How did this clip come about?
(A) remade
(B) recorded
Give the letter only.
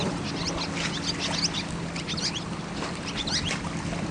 B